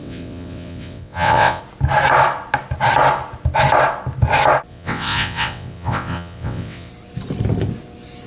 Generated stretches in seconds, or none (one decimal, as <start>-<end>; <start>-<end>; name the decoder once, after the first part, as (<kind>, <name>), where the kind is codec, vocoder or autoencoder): 0.0-1.6 (vocoder, WaveNeXt); 4.7-6.9

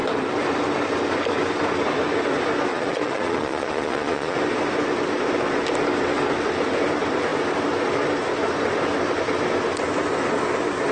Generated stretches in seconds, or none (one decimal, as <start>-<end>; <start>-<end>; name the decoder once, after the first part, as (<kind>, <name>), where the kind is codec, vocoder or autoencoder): 2.7-4.4 (vocoder, Vocos)

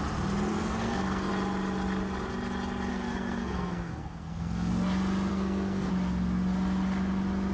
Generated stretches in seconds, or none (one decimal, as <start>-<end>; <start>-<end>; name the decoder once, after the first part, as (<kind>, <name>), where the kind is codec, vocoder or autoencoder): 0.5-1.3 (codec, SNAC); 2.9-4.7; 5.3-5.9

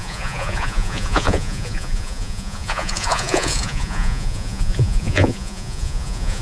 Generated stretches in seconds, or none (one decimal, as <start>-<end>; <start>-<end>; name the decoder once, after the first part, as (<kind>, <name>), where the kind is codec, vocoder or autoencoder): 0.0-6.4 (vocoder, Vocos)

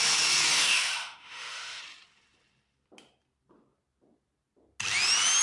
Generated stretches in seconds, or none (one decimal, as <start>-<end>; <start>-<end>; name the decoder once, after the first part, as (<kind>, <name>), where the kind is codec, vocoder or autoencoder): 0.5-1.8 (autoencoder, DAC-VAE)

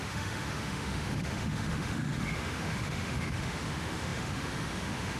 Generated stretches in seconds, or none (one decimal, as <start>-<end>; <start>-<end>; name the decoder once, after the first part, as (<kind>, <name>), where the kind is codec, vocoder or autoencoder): 0.0-5.2 (autoencoder, DAC-VAE)

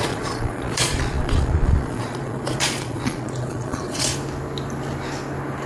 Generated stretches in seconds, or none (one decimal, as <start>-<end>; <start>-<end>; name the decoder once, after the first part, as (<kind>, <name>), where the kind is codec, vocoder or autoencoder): 0.0-4.1 (vocoder, Vocos)

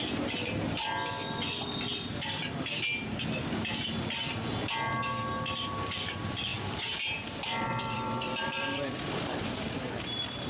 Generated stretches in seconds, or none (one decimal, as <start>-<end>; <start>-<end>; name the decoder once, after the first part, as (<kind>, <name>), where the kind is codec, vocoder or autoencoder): 6.5-9.4 (vocoder, BigVGAN v2)